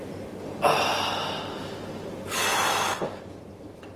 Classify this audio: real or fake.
real